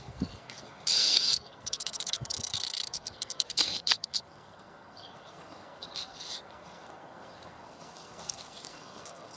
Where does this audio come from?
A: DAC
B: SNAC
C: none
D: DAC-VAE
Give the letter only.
B